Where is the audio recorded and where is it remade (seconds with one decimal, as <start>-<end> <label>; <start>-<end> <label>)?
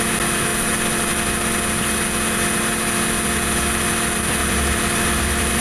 0.0-4.4 recorded; 4.4-5.6 remade